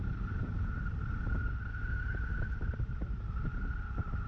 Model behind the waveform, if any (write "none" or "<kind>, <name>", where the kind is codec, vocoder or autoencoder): none